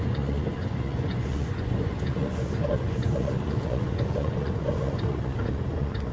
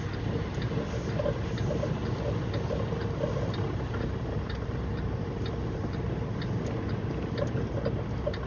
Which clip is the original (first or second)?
second